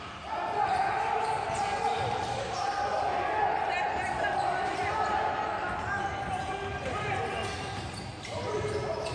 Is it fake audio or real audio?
real